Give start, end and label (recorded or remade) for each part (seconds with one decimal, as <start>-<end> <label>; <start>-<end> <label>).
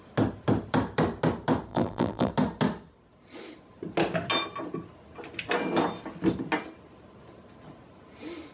0.0-1.7 recorded; 1.7-2.3 remade; 2.3-8.5 recorded